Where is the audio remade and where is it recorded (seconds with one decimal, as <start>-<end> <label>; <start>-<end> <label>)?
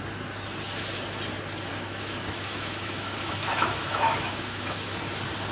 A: 0.0-1.7 recorded; 1.7-5.0 remade; 5.0-5.5 recorded